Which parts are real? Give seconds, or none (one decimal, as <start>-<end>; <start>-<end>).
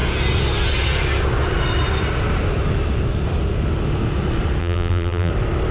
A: 0.0-4.6; 5.3-5.7